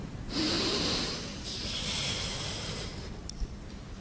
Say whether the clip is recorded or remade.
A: recorded